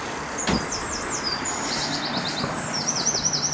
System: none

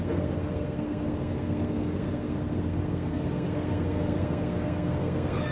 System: codec, SNAC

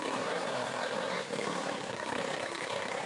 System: codec, SNAC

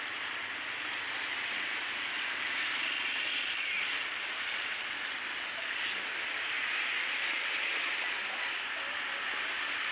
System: none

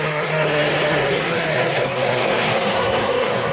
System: codec, SNAC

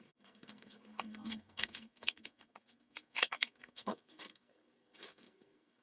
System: codec, SNAC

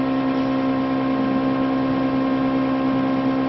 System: none